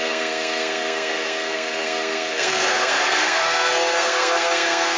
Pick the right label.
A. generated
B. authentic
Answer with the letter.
A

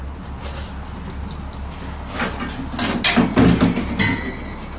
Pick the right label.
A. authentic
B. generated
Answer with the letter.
A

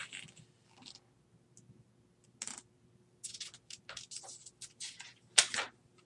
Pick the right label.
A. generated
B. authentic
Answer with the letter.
B